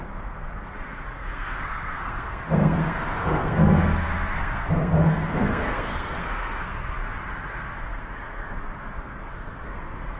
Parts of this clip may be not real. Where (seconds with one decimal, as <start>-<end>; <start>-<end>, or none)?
0.0-7.0; 7.5-10.2